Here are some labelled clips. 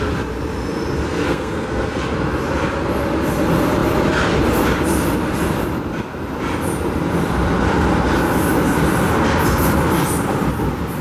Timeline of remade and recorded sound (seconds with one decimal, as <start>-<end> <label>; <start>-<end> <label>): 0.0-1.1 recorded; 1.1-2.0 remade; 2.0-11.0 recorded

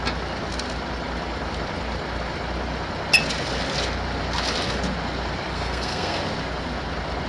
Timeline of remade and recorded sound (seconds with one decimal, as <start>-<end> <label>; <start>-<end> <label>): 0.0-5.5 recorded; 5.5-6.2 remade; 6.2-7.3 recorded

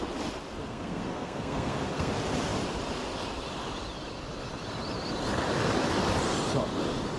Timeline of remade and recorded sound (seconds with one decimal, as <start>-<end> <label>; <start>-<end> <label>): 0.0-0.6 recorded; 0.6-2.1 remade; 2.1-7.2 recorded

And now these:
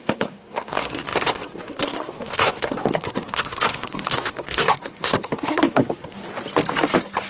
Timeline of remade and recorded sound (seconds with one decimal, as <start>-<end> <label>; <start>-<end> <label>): 0.0-6.2 remade; 6.2-7.3 recorded

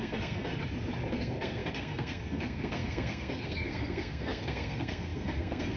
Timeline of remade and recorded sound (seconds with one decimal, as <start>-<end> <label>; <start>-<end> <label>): 0.0-0.5 remade; 0.5-1.1 recorded; 1.1-5.8 remade